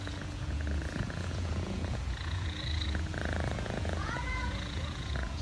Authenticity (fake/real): fake